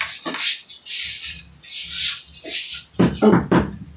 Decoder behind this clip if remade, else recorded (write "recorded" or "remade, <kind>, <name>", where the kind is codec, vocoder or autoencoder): recorded